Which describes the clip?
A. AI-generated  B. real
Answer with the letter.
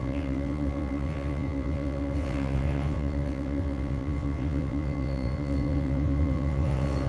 A